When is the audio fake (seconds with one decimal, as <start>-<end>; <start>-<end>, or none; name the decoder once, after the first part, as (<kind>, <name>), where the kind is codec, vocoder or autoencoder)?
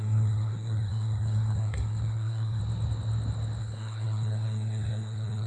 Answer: 0.0-2.6 (codec, SNAC); 3.6-5.5